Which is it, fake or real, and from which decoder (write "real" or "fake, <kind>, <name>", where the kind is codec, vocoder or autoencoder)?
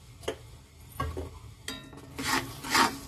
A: real